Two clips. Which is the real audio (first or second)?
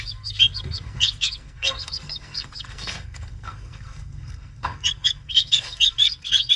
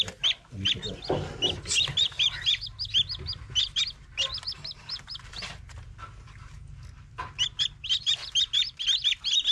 second